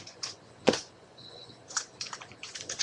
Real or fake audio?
fake